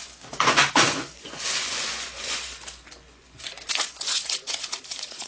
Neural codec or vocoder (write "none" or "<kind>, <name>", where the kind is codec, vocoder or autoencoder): vocoder, Vocos